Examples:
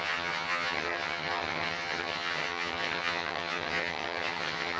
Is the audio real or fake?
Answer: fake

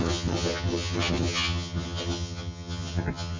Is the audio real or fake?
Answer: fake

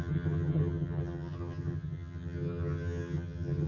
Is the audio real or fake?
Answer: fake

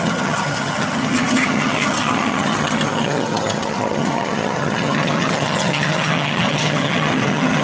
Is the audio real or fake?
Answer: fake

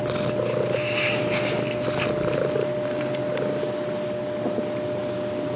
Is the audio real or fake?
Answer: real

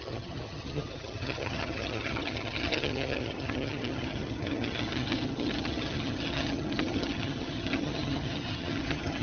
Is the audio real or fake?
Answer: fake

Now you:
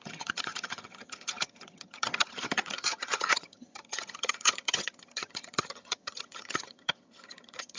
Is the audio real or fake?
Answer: fake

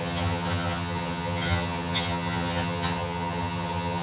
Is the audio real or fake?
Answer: fake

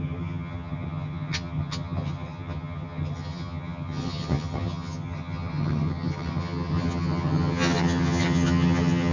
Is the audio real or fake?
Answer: fake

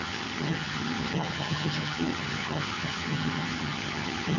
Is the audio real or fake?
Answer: fake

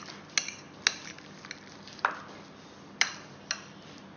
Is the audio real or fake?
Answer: real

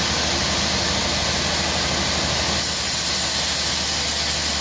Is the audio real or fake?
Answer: real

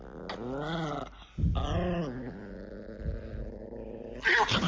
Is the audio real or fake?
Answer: real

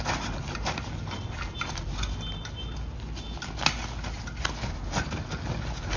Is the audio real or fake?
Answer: real